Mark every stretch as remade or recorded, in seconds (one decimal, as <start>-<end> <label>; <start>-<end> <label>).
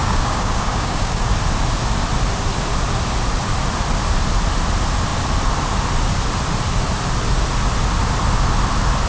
0.0-1.3 remade; 1.3-9.1 recorded